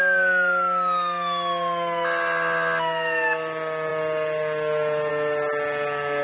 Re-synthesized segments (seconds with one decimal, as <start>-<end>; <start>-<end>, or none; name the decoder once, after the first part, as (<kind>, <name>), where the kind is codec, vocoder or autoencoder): none